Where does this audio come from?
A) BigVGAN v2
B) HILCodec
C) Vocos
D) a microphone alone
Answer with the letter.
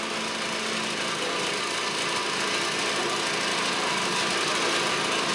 D